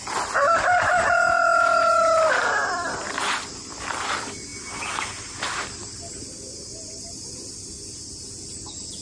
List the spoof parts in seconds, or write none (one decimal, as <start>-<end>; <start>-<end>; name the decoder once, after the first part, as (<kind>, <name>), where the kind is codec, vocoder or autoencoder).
none